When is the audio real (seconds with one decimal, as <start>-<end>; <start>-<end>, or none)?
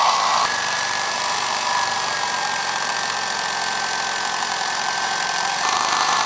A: 2.9-4.4